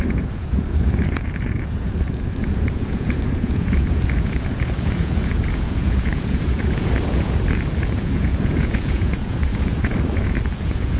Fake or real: fake